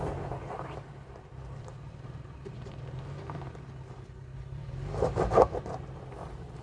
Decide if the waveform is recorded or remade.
recorded